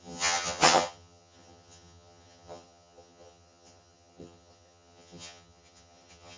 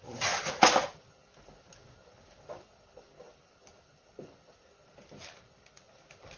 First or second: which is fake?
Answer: first